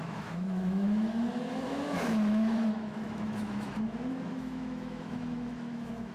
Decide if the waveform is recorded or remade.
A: remade